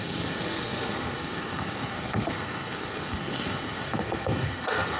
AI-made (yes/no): yes